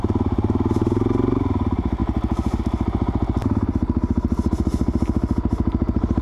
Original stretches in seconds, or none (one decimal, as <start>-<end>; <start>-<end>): 0.0-6.2